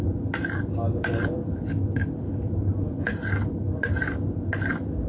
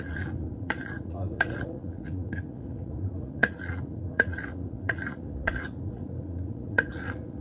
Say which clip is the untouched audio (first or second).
first